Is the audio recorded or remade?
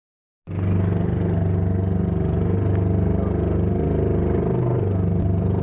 recorded